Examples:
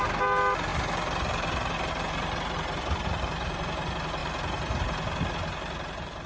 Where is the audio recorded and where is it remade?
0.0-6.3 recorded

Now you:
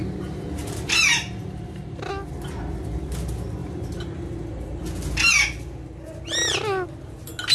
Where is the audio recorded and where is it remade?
0.0-1.1 recorded; 1.1-2.1 remade; 2.1-3.6 recorded; 3.6-4.8 remade; 4.8-7.5 recorded

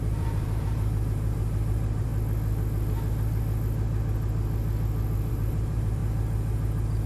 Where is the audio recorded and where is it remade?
0.0-2.1 remade; 2.1-5.3 recorded; 5.3-6.0 remade; 6.0-7.1 recorded

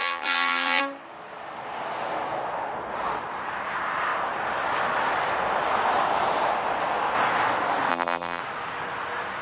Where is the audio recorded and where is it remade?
0.0-0.8 remade; 0.8-7.9 recorded; 7.9-8.4 remade; 8.4-9.4 recorded

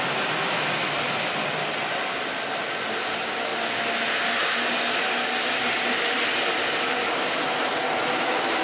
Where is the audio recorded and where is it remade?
0.0-8.6 recorded

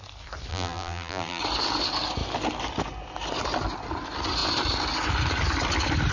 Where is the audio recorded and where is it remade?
0.0-0.5 recorded; 0.5-1.4 remade; 1.4-6.1 recorded